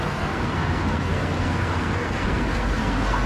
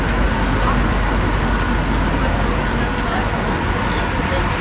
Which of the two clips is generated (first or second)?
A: first